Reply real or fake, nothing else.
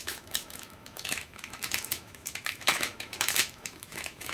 fake